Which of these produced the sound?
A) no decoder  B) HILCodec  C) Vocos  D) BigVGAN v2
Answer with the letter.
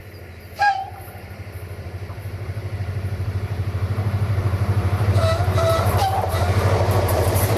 D